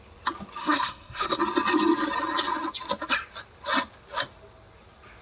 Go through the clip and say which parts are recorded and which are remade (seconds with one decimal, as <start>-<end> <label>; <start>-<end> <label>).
0.0-0.6 recorded; 0.6-1.4 remade; 1.4-5.2 recorded